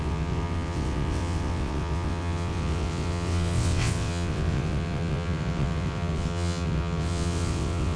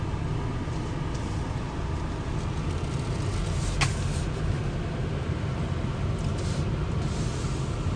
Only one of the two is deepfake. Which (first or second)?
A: first